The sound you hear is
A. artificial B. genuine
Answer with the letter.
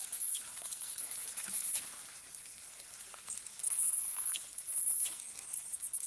A